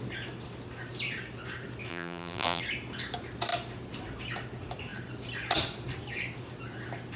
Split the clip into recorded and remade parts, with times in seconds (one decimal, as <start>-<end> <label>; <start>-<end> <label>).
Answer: 0.0-1.9 recorded; 1.9-2.6 remade; 2.6-7.2 recorded